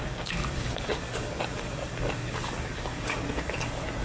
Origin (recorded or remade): remade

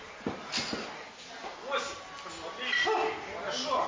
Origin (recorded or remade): recorded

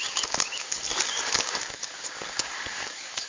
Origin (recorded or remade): remade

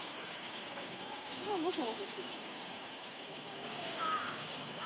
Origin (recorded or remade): remade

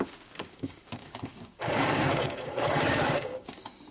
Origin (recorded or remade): remade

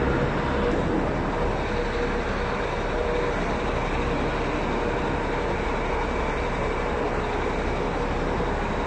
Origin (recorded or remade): recorded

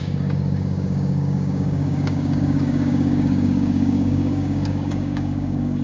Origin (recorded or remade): remade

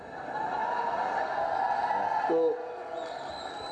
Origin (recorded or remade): recorded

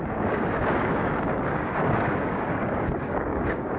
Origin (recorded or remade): remade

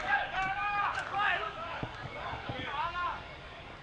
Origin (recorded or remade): remade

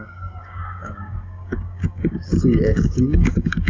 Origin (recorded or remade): remade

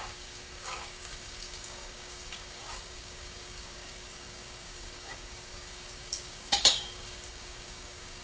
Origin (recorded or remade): remade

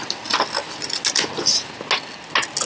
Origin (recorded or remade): recorded